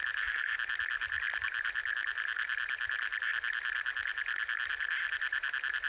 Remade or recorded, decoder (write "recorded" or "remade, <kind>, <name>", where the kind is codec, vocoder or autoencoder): recorded